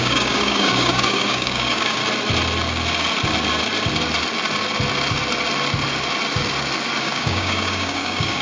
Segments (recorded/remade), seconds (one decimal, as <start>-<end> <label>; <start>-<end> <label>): 0.0-2.0 remade; 2.0-7.0 recorded; 7.0-8.4 remade